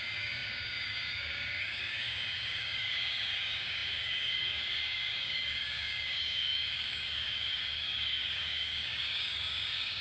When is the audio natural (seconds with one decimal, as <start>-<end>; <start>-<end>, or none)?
none